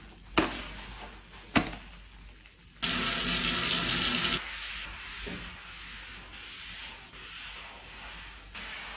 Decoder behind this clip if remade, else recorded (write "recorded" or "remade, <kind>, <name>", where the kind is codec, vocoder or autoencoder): recorded